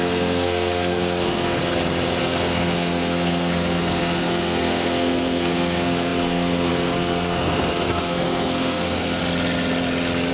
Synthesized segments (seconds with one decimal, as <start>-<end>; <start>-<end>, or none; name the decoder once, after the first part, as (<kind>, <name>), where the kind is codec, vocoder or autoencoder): 0.0-1.6 (codec, SNAC); 2.2-9.2